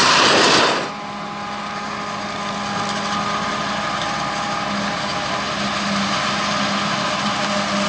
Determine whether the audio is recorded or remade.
recorded